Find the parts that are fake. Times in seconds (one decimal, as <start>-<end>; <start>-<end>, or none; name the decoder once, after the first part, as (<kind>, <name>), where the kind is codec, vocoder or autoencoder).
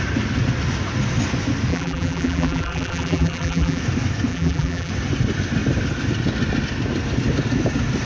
1.7-3.8 (vocoder, BigVGAN v2); 4.3-4.9